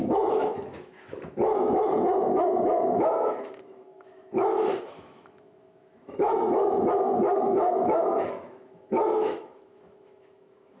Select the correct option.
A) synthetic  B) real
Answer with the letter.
A